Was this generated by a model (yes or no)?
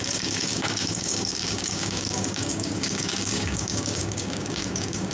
yes